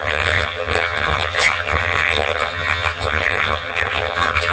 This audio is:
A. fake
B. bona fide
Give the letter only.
A